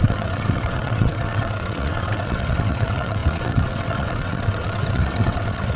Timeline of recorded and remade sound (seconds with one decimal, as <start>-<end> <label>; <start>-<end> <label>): 0.0-5.8 remade

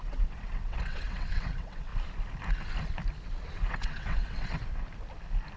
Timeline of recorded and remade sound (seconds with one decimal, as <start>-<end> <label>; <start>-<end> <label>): 0.0-1.9 remade; 1.9-3.7 recorded; 3.7-4.6 remade; 4.6-5.6 recorded

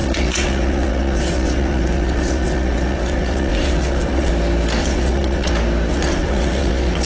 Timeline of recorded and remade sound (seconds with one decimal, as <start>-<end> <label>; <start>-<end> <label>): 0.0-4.3 remade; 4.3-4.8 recorded; 4.8-5.5 remade; 5.5-5.9 recorded; 5.9-7.1 remade

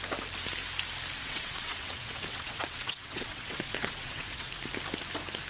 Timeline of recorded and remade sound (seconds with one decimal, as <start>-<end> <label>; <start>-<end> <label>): 0.0-1.2 recorded; 1.2-4.5 remade; 4.5-5.5 recorded

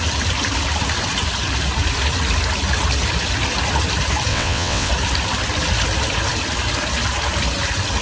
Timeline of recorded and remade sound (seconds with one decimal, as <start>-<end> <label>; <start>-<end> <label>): 0.0-4.3 recorded; 4.3-4.9 remade; 4.9-8.0 recorded